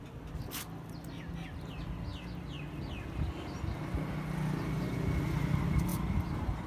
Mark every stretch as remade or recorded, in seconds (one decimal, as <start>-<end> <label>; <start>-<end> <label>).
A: 0.0-6.7 recorded